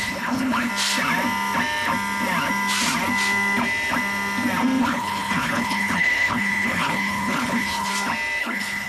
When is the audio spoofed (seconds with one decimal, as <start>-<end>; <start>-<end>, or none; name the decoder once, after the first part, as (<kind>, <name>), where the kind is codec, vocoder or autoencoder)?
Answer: 0.0-0.7 (codec, HILCodec); 4.8-7.9; 8.4-8.9